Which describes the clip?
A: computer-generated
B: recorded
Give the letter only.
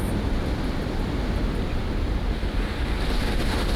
B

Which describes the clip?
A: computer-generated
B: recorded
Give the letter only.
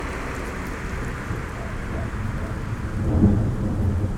B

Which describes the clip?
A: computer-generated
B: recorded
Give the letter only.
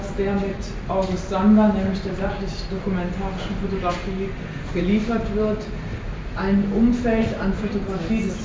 B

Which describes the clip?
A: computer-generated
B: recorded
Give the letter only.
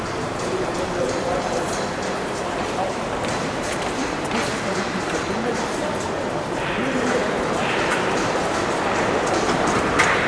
A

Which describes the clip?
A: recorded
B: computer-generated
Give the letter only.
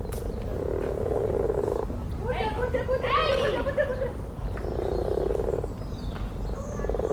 A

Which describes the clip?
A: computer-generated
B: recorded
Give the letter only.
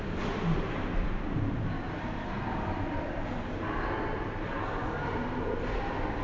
B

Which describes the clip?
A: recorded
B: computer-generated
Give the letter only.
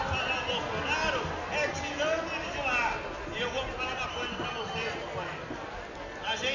A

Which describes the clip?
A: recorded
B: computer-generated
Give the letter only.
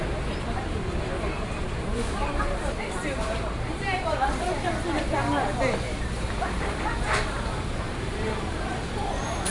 B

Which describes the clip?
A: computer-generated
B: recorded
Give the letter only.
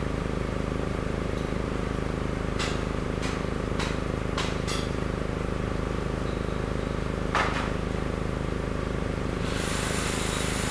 A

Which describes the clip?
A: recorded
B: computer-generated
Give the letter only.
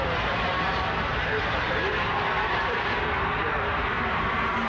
B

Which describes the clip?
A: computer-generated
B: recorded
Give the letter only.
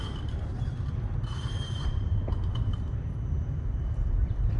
A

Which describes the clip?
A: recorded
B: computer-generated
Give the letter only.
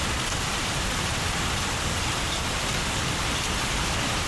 B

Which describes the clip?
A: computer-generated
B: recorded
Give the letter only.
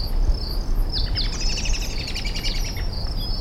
B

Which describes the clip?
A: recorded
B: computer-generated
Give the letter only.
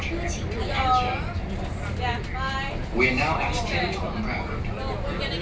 A